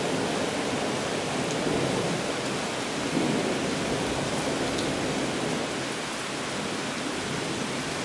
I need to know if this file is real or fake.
real